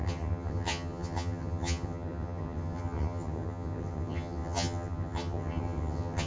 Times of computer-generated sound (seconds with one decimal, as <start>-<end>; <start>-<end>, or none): 0.0-6.3

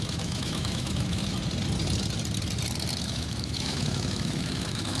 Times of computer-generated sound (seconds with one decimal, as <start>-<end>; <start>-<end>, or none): 0.0-1.2; 3.0-5.0